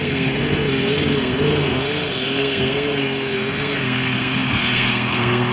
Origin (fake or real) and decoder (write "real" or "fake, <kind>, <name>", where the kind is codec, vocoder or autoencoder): fake, codec, SNAC